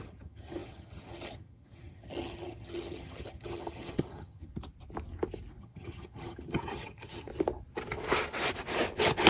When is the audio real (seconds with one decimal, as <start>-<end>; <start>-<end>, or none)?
4.5-5.6; 7.3-9.3